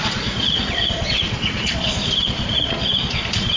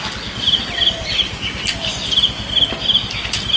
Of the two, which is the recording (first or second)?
second